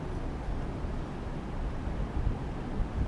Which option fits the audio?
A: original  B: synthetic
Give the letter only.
A